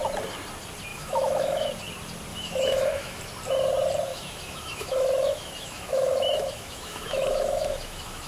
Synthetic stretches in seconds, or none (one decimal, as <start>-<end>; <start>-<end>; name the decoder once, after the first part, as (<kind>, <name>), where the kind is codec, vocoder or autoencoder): 0.9-1.7 (autoencoder, DAC-VAE); 2.3-3.2; 4.1-8.3